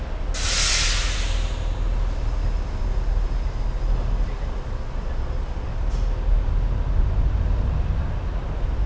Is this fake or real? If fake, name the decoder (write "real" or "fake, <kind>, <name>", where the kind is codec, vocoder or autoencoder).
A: real